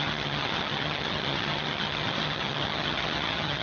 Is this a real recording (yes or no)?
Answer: no